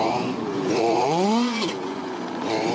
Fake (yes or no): yes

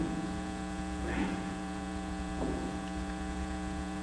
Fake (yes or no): yes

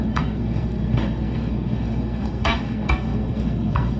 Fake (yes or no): yes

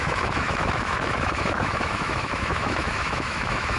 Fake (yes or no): yes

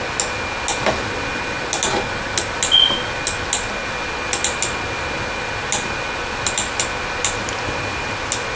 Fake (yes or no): no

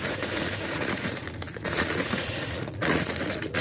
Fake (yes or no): yes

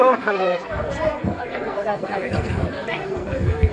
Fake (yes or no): yes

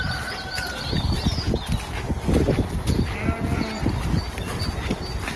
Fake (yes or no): no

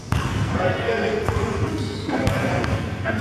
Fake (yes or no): yes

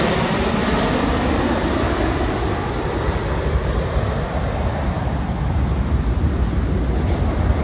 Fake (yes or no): no